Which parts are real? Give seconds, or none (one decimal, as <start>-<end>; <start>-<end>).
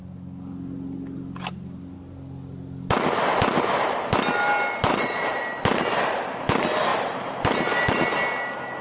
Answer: 0.0-4.9; 5.4-8.8